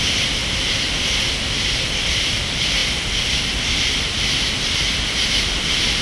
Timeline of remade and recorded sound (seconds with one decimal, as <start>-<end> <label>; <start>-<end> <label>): 0.0-0.4 remade; 0.4-1.0 recorded; 1.0-2.8 remade; 2.8-3.5 recorded; 3.5-6.0 remade